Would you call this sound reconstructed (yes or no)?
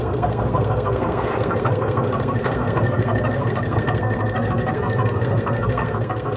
yes